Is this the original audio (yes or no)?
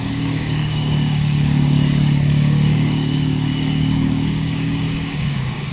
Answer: no